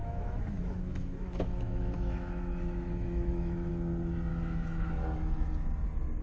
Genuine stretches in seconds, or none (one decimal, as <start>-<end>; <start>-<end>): 3.7-4.3; 4.9-6.2